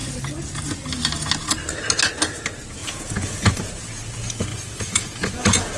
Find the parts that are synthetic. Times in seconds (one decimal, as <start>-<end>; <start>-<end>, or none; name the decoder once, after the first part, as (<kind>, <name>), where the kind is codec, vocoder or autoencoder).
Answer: 2.8-3.7 (vocoder, Vocos); 4.5-5.8